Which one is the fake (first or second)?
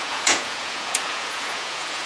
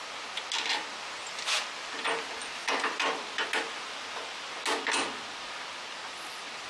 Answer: first